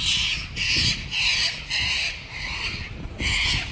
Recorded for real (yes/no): yes